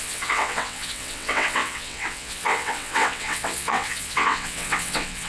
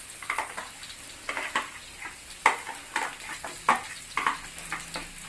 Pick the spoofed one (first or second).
first